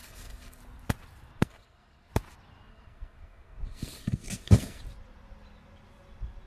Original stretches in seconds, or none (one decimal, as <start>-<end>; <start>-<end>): 0.6-1.4; 2.1-2.7; 4.8-6.5